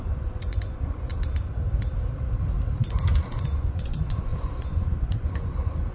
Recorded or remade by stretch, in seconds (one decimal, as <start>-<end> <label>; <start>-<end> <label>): 0.0-1.1 remade; 1.1-3.3 recorded; 3.3-5.9 remade